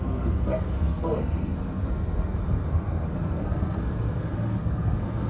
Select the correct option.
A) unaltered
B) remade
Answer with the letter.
B